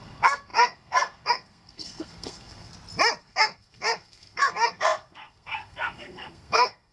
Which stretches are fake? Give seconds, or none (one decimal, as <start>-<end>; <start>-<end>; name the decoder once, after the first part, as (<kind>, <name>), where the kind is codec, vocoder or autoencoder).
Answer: 0.0-2.7 (codec, SNAC); 3.2-6.9